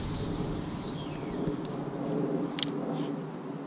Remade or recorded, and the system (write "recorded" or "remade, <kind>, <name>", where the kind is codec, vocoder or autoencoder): recorded